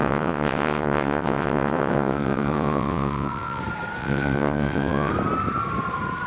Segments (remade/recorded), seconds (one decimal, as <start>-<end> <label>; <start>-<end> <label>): 0.0-3.6 remade; 3.6-4.0 recorded; 4.0-5.1 remade; 5.1-6.3 recorded